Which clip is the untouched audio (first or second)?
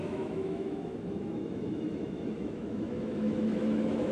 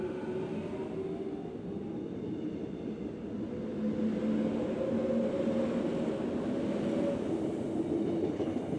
second